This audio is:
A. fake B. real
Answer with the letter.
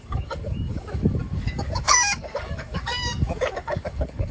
A